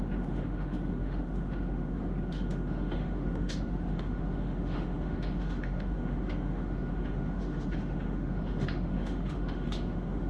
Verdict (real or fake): fake